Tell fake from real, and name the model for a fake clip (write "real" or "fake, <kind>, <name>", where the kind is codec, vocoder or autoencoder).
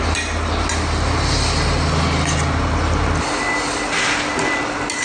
real